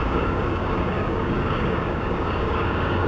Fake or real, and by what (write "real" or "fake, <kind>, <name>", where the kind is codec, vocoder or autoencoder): fake, codec, DAC